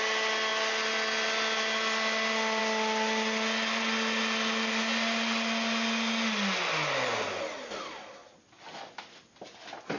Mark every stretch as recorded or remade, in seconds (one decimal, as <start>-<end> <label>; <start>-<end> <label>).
0.0-10.0 recorded